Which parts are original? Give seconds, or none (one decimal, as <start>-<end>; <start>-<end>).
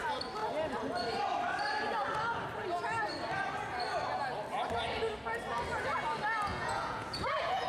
0.0-6.5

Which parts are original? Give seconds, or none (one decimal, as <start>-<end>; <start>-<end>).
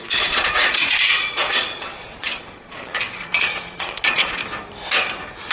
4.4-5.5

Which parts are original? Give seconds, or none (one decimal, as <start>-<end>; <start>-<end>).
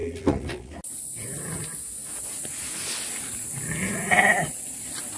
0.7-5.2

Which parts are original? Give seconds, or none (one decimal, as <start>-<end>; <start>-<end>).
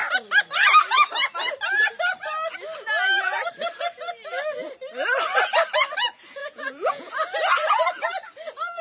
0.0-6.4; 7.1-8.8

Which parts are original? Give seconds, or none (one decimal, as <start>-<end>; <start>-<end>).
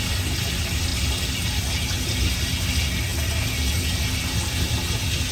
0.0-5.3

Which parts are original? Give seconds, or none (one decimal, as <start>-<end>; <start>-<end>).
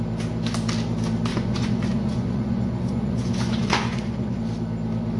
0.0-1.3; 4.4-5.2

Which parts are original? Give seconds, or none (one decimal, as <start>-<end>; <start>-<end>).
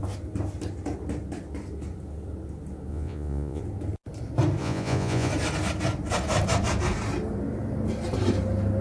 0.0-2.9; 3.6-4.6; 5.3-8.8